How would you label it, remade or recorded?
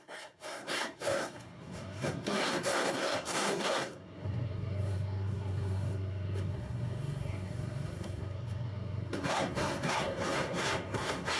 remade